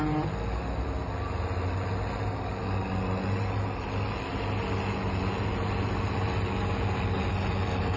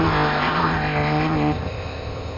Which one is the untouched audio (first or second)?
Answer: first